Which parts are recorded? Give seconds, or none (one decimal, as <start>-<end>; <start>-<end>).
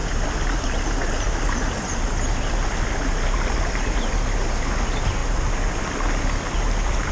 0.0-7.1